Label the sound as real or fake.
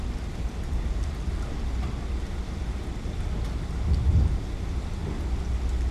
real